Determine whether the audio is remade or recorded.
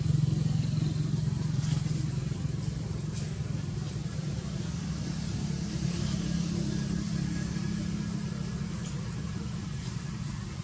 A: recorded